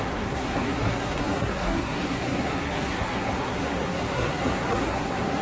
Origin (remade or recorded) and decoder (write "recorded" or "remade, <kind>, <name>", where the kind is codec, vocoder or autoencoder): remade, codec, SNAC